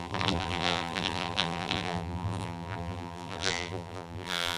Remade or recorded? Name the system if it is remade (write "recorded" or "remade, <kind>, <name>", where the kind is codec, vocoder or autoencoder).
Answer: remade, vocoder, BigVGAN v2